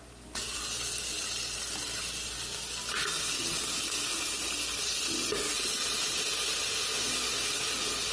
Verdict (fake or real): real